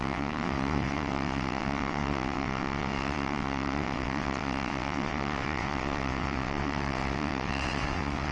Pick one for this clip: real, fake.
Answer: fake